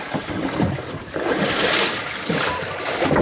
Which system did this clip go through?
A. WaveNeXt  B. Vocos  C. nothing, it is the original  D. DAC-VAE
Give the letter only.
C